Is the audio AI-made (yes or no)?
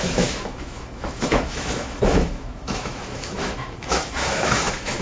yes